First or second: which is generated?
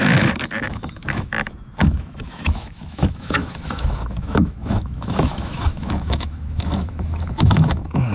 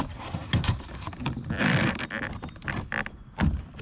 first